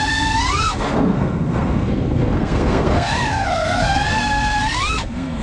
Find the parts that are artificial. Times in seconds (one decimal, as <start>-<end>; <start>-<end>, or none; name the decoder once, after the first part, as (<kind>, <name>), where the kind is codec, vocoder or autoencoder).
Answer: 0.0-5.4 (codec, SNAC)

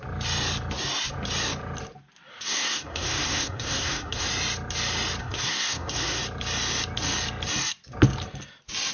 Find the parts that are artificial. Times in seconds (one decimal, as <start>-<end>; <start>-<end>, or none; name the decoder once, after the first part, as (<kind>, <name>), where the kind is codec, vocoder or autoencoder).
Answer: 2.3-4.3 (codec, SNAC); 5.2-6.2

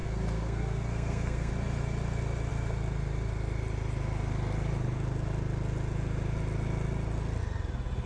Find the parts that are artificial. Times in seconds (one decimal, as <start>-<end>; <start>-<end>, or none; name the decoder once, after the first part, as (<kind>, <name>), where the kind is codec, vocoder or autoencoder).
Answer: 0.0-1.5 (codec, SNAC)

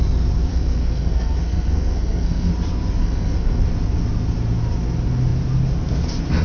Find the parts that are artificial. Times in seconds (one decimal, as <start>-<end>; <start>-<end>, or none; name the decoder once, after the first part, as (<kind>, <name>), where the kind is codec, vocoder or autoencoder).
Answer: 0.5-2.5 (codec, SNAC); 3.0-3.6

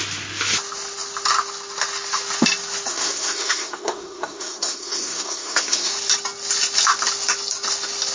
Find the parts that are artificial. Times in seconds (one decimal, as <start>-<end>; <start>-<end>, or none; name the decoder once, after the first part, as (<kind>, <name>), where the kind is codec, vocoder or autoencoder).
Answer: 2.9-5.9 (codec, SNAC)

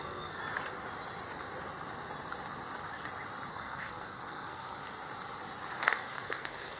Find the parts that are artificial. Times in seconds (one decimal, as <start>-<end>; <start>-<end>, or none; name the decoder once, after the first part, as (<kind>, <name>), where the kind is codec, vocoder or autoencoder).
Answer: 0.0-0.4 (codec, SNAC); 3.5-4.8; 5.8-6.8

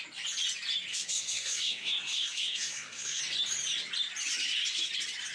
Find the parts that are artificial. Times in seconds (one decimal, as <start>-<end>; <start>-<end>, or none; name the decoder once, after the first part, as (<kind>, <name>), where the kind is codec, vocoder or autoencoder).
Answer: 0.9-3.2 (codec, SNAC)